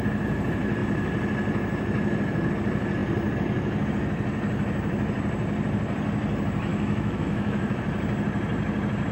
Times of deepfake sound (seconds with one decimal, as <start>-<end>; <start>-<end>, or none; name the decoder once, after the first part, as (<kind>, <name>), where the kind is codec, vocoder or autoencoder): 6.7-7.8 (autoencoder, DAC-VAE)